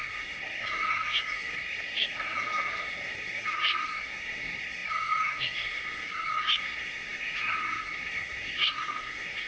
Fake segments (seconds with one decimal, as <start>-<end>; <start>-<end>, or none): 0.0-9.5